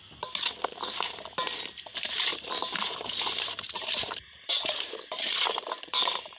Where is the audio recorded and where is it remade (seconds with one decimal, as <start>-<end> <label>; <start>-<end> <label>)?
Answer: 0.0-2.0 recorded; 2.0-6.4 remade